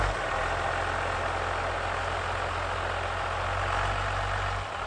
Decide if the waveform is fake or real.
real